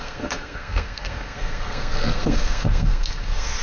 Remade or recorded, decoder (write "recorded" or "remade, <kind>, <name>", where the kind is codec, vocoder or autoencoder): remade, codec, SNAC